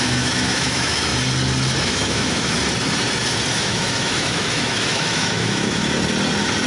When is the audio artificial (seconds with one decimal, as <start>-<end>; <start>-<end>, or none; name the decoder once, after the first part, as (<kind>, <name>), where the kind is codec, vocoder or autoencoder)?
0.0-1.1 (autoencoder, DAC-VAE); 1.8-2.6; 3.5-5.8